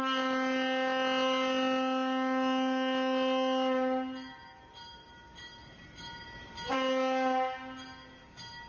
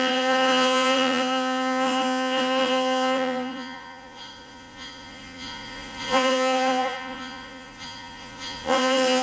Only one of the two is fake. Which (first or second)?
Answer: second